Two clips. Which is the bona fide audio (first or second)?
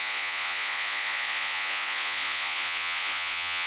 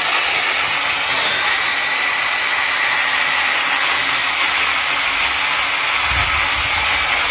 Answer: second